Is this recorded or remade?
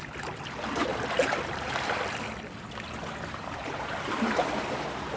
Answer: recorded